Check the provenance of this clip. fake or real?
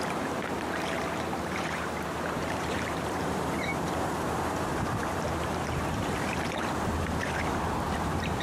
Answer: fake